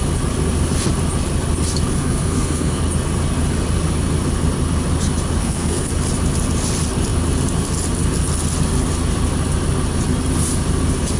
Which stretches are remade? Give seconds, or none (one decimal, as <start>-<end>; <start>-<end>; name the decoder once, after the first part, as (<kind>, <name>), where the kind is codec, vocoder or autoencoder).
1.9-2.8 (codec, SNAC); 5.4-5.9